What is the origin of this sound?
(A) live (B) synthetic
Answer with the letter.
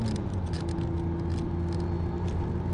A